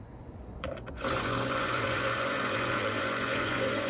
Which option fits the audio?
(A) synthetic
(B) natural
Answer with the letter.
A